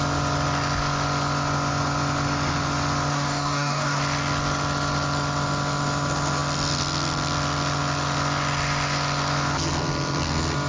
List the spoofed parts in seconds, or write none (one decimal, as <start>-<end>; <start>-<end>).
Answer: 3.1-4.0